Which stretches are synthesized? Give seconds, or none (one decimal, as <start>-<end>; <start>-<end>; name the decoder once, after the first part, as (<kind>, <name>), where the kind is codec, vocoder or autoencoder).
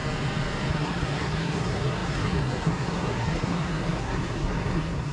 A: 0.7-5.1 (codec, SNAC)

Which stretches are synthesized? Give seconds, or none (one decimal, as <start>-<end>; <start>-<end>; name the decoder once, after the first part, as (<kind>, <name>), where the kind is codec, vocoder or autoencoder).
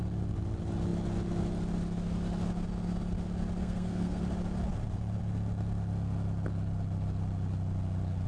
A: 3.6-4.2 (codec, SNAC)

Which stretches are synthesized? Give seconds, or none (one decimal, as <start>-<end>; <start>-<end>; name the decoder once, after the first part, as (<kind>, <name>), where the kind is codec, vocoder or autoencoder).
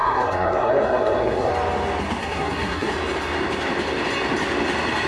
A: 0.0-1.5 (codec, SNAC); 2.2-2.9